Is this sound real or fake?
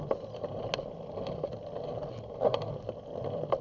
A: real